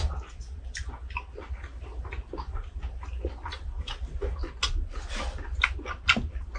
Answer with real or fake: real